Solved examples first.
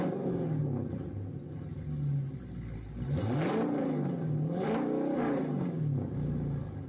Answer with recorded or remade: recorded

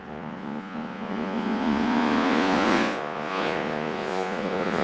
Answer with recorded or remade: remade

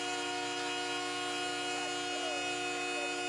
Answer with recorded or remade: recorded